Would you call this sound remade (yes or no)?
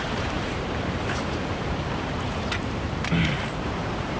yes